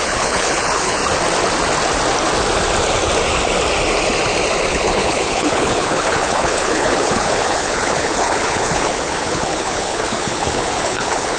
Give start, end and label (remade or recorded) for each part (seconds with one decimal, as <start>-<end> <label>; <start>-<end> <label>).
0.0-1.0 remade; 1.0-4.7 recorded; 4.7-11.4 remade